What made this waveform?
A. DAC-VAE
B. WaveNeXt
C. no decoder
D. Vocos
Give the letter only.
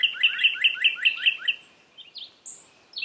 C